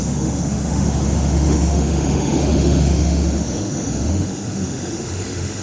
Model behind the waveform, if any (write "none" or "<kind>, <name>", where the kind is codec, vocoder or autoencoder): autoencoder, DAC-VAE